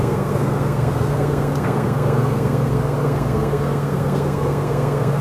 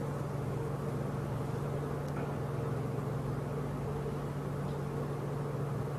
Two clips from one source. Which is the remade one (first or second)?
first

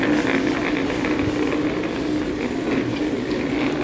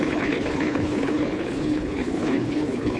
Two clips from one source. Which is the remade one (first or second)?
second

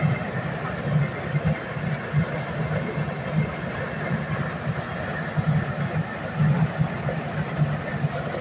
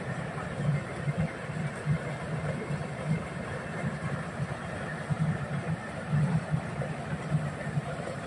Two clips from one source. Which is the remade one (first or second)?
second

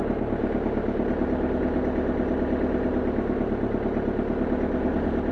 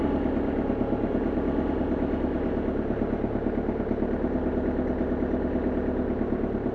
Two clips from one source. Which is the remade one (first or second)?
second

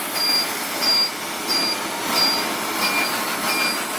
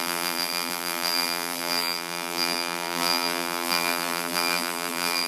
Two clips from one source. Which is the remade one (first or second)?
second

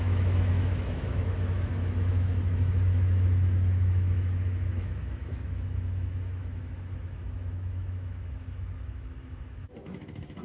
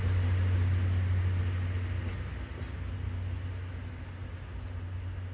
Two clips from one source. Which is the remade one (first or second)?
first